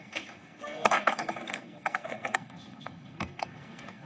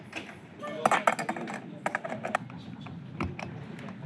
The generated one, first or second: first